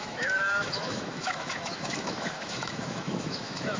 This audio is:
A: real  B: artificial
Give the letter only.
B